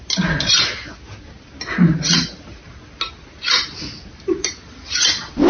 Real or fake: real